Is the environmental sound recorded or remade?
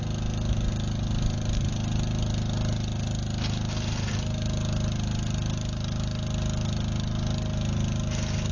recorded